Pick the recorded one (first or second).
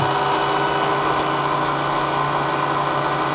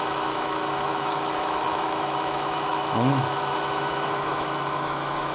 first